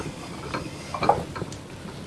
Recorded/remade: recorded